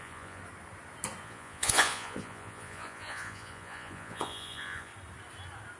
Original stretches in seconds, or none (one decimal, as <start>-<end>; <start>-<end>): 0.4-1.2; 4.9-5.8